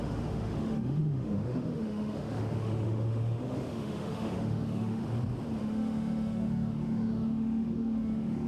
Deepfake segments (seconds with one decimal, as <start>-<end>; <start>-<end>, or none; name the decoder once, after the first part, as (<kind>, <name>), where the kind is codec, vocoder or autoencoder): 0.0-5.0 (autoencoder, DAC-VAE); 5.6-8.5